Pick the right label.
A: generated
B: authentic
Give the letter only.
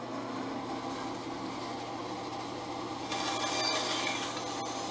B